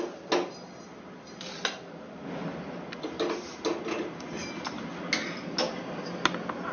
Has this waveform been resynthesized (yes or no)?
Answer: no